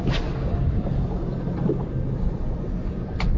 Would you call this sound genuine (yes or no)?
yes